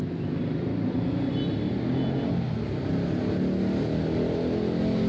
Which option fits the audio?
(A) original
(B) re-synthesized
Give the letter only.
A